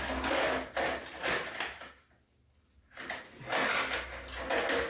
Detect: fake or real real